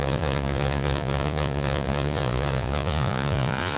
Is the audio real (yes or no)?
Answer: no